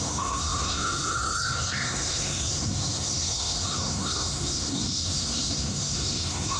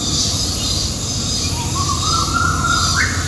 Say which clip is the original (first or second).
second